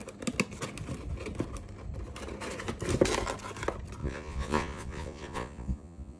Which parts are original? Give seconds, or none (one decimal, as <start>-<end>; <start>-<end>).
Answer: 0.0-4.0